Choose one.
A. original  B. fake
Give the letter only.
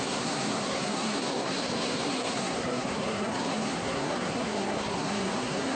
B